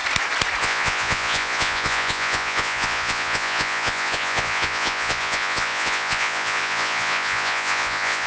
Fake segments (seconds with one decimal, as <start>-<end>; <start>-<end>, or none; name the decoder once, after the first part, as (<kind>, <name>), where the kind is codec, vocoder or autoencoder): 0.6-8.3 (vocoder, Vocos)